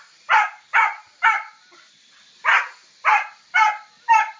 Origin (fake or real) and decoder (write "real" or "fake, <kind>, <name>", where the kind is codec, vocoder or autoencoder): fake, vocoder, BigVGAN v2